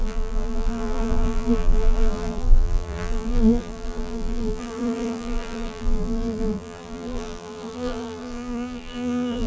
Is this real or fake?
fake